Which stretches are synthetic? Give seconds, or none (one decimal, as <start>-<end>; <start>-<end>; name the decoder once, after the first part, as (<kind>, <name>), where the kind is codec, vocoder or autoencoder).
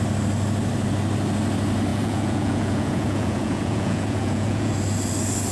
1.9-4.7 (vocoder, Vocos)